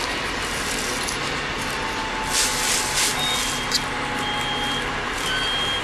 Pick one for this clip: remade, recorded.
recorded